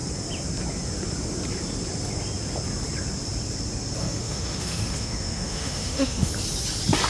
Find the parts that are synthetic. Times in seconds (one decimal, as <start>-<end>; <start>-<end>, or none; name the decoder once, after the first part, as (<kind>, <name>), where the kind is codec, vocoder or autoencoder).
4.0-6.3 (autoencoder, DAC-VAE)